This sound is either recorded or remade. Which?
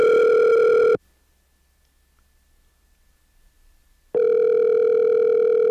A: recorded